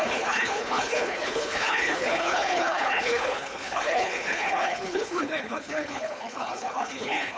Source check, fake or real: fake